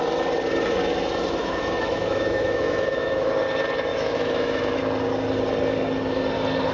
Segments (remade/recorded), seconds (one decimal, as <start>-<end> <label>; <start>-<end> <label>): 0.0-1.4 recorded; 1.4-3.3 remade; 3.3-3.9 recorded; 3.9-4.8 remade; 4.8-6.7 recorded